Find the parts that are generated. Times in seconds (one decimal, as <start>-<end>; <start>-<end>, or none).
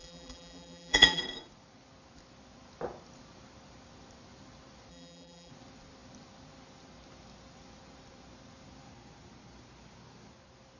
0.0-1.2; 4.9-5.5